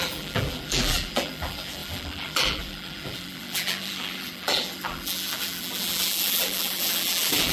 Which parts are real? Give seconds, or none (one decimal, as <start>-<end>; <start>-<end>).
none